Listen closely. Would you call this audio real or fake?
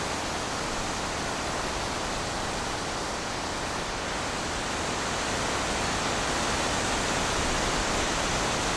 real